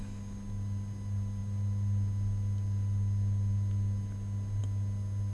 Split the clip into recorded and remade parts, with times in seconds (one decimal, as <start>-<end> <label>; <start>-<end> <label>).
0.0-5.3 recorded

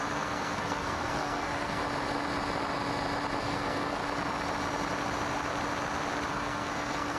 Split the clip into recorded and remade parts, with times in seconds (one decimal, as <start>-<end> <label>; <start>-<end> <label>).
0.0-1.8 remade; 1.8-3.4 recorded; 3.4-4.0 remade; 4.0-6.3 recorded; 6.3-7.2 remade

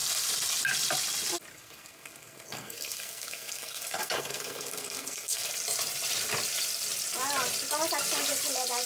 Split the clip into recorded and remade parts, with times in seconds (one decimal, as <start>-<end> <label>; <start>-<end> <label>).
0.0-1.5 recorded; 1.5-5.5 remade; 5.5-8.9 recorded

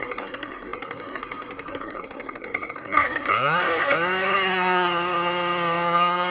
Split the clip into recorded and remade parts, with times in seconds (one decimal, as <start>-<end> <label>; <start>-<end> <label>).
0.0-6.3 remade

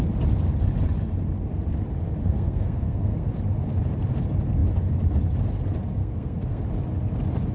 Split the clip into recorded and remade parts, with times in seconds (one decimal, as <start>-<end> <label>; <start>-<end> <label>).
0.0-2.2 recorded; 2.2-3.3 remade; 3.3-6.0 recorded; 6.0-6.6 remade; 6.6-7.5 recorded

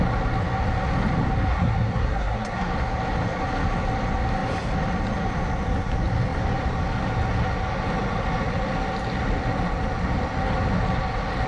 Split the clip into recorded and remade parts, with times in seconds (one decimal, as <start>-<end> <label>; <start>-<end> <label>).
0.0-1.5 recorded; 1.5-2.7 remade; 2.7-11.5 recorded

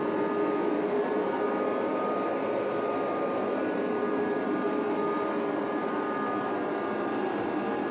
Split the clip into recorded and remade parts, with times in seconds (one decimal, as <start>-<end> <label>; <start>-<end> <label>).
0.0-7.9 recorded